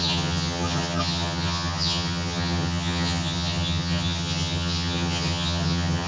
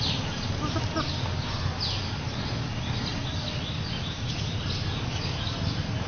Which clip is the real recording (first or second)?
second